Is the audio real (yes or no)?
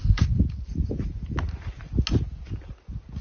yes